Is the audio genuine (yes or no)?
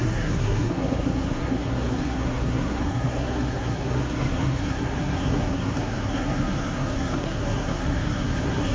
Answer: no